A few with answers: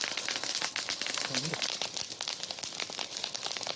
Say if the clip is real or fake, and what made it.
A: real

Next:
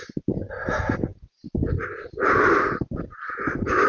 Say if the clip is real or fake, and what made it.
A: real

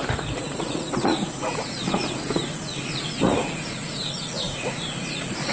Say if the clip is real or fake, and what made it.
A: fake, vocoder, Vocos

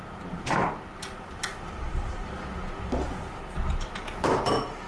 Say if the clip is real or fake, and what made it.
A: real